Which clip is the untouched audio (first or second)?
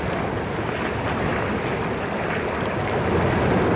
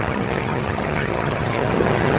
first